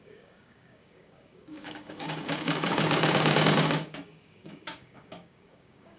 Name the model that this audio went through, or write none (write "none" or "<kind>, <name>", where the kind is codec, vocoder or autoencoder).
codec, DAC